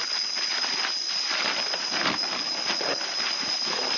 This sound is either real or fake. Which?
real